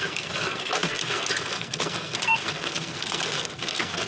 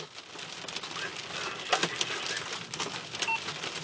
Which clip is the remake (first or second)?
first